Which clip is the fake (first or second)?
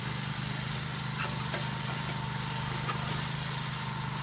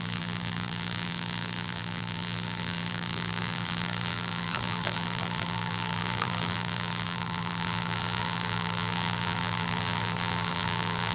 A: second